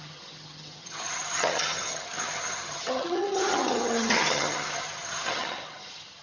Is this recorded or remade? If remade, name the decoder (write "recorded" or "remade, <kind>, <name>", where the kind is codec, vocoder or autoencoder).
remade, vocoder, HiFi-GAN